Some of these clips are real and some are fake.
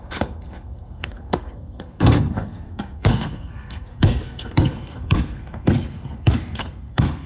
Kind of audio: fake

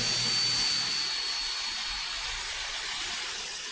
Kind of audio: real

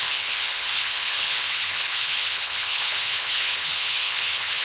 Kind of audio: fake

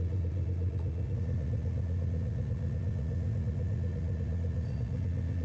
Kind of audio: fake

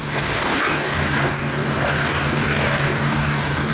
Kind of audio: fake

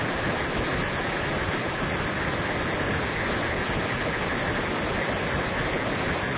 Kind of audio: real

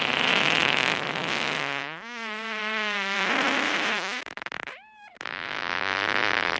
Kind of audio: fake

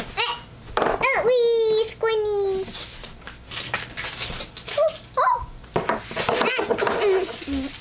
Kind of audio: real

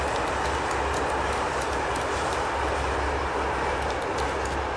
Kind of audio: real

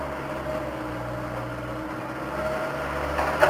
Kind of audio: real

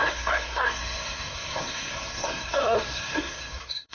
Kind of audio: fake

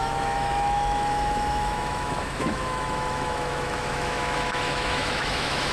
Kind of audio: fake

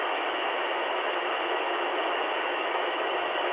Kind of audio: fake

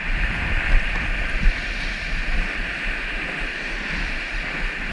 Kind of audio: fake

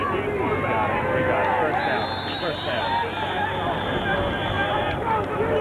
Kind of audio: real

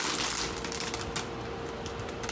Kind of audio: real